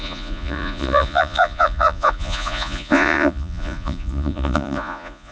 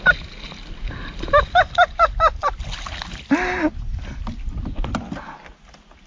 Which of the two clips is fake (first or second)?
first